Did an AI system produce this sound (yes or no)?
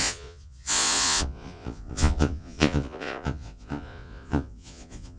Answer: yes